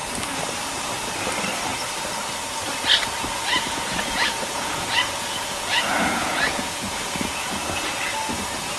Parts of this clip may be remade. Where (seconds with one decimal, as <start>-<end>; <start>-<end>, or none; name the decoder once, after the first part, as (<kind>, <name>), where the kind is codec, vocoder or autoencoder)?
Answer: 3.5-7.8 (vocoder, Vocos)